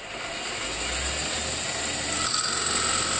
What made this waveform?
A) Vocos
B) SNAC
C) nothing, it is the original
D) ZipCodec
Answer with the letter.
C